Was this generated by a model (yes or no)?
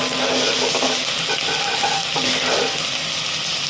no